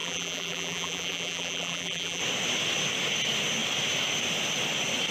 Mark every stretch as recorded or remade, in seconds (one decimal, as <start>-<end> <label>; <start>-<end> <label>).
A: 0.0-2.2 remade; 2.2-5.1 recorded